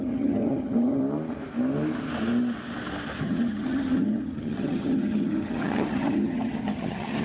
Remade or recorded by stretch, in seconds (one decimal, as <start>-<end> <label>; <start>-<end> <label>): 0.0-1.0 remade; 1.0-3.2 recorded; 3.2-7.2 remade